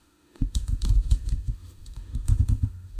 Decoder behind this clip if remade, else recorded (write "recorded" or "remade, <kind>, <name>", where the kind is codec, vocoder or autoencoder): remade, autoencoder, DAC-VAE